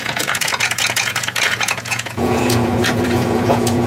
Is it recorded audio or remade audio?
remade